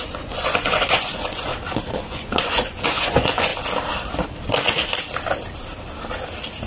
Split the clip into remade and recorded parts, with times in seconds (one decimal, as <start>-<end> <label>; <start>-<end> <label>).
0.0-1.5 remade; 1.5-2.0 recorded; 2.0-3.5 remade; 3.5-6.7 recorded